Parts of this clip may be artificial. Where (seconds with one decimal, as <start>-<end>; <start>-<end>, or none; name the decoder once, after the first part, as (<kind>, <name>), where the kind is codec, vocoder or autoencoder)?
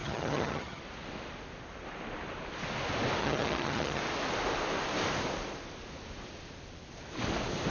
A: 0.0-0.8 (vocoder, HiFi-GAN); 3.2-4.0